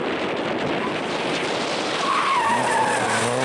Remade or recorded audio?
recorded